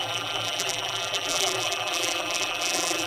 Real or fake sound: fake